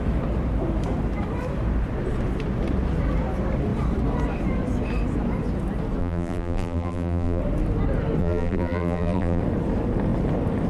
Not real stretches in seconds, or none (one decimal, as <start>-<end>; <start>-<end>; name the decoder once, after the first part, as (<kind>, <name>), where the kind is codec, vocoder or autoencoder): 6.0-7.4 (vocoder, BigVGAN v2); 8.2-9.4